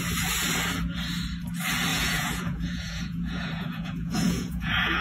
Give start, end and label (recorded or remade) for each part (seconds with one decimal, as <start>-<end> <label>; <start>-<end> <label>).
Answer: 0.0-1.9 recorded; 1.9-5.0 remade